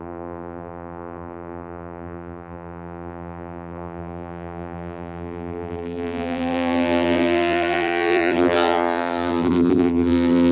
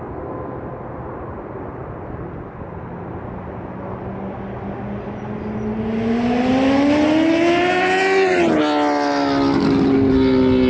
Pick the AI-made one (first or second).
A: first